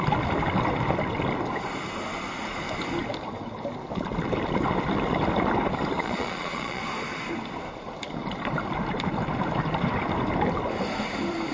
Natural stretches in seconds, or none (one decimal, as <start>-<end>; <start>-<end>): 0.0-6.0; 6.8-11.5